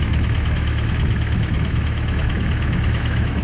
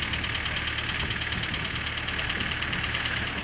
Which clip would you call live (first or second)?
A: second